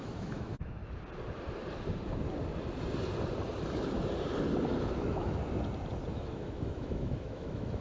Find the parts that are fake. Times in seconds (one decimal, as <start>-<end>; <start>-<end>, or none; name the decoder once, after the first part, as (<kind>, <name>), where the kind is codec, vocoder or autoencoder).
0.0-0.8 (autoencoder, DAC-VAE); 5.0-5.4; 6.1-7.8